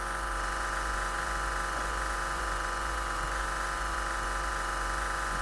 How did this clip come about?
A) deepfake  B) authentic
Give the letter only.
A